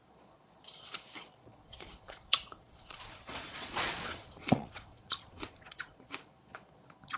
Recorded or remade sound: remade